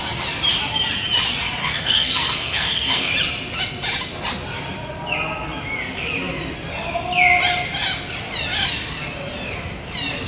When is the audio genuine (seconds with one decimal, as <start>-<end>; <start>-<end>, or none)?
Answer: 0.0-1.6; 3.1-10.3